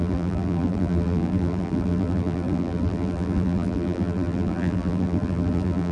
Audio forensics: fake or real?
fake